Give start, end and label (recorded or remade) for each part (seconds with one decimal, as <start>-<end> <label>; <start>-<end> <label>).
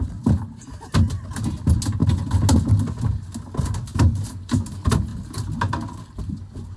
0.0-6.8 recorded